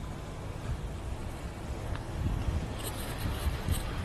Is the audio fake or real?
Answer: real